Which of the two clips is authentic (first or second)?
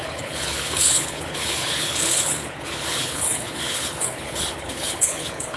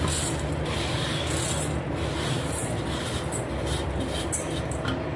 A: second